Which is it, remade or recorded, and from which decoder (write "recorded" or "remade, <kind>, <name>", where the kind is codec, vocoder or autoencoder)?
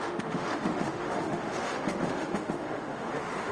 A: remade, autoencoder, DAC-VAE